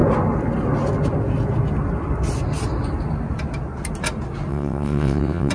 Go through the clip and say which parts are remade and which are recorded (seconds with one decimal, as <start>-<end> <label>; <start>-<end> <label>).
0.0-4.5 recorded; 4.5-5.5 remade